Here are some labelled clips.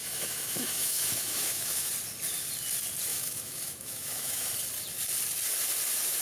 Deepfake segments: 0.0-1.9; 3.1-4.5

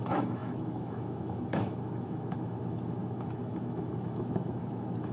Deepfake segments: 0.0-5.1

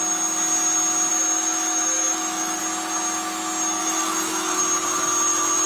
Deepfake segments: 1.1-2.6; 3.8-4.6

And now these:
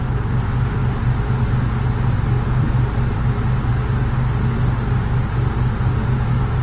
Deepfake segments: none